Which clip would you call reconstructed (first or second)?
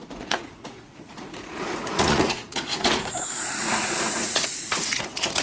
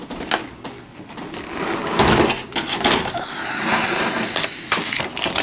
first